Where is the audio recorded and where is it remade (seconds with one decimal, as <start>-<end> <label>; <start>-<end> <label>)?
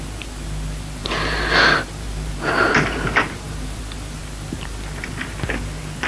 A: 0.0-1.0 recorded; 1.0-3.8 remade; 3.8-6.1 recorded